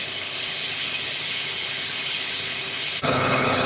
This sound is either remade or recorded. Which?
remade